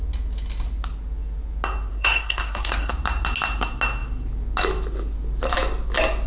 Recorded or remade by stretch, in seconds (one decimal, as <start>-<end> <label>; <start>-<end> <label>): 0.0-1.9 recorded; 1.9-2.9 remade; 2.9-6.3 recorded